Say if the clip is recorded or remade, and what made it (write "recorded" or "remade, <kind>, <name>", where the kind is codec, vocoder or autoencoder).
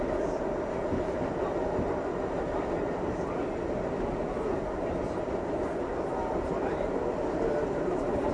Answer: recorded